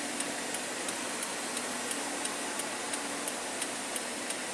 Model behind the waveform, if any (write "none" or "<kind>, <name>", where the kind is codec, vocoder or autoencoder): none